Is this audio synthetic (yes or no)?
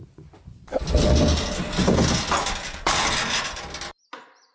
no